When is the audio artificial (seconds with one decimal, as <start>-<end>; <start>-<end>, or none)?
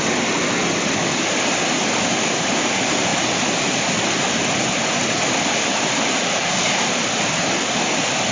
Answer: none